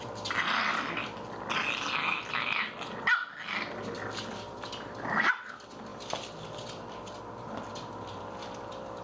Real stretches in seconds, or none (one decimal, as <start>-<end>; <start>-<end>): 0.0-9.0